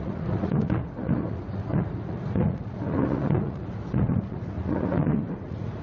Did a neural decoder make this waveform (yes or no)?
yes